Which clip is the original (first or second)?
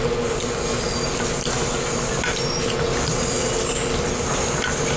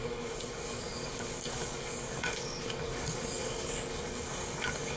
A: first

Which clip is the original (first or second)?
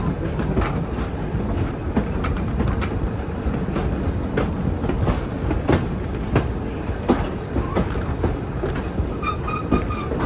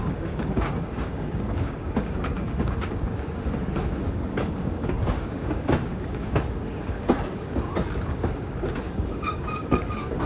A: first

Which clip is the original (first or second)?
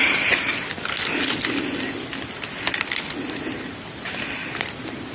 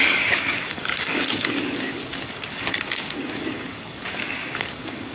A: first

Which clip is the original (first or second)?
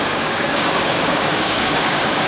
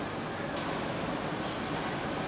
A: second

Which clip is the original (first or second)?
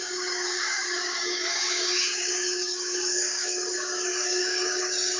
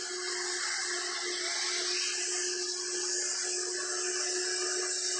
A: second